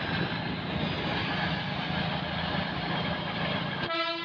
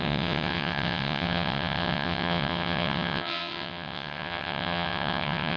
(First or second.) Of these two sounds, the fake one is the second